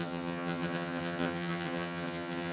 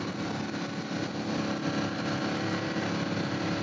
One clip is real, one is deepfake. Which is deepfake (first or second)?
first